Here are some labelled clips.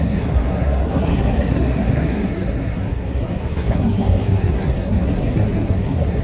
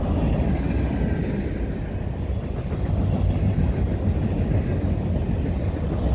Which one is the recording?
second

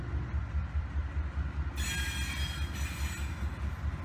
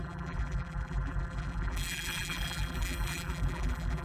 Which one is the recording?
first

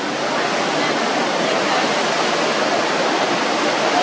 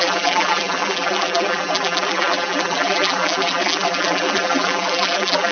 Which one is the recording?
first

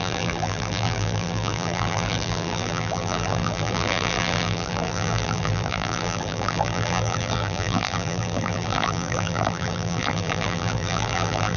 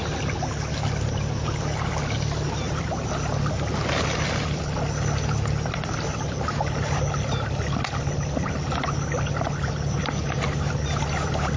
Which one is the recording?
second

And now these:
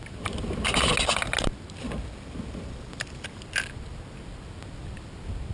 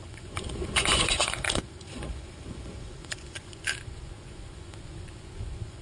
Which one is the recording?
first